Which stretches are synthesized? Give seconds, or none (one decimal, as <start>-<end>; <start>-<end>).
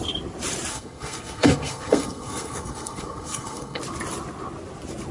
0.7-3.8